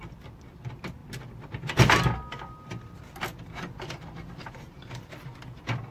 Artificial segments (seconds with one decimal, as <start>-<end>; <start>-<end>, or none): none